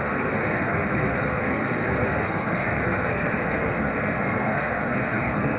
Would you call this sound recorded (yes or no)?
no